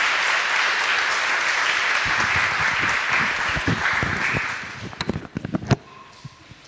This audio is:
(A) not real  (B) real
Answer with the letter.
B